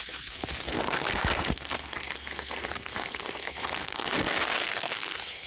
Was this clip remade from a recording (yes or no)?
yes